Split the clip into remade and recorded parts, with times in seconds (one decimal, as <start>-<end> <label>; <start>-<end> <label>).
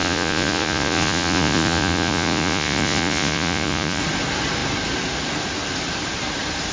0.0-4.0 remade; 4.0-6.7 recorded